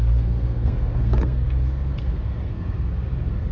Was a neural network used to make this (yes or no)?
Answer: yes